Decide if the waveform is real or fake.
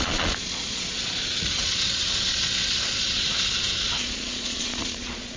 fake